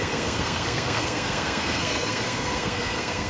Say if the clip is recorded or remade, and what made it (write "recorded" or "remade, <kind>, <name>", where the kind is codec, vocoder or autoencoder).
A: remade, codec, SNAC